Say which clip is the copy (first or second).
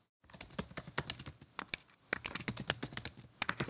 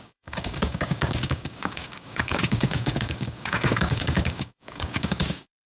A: second